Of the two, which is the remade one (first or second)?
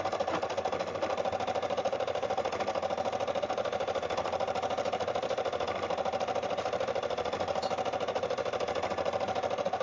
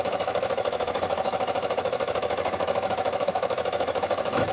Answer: second